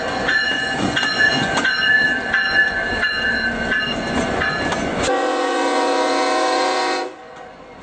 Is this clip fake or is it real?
fake